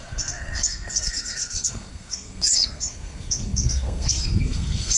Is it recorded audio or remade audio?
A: remade